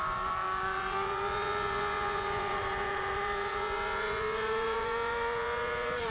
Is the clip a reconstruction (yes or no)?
yes